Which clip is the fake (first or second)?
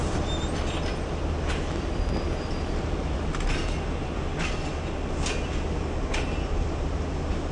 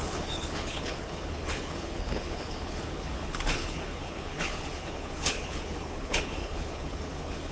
second